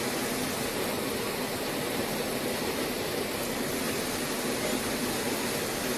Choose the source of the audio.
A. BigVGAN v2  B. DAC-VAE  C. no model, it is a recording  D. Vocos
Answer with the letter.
C